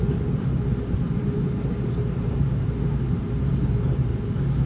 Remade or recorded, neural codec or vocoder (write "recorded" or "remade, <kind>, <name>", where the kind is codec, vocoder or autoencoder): recorded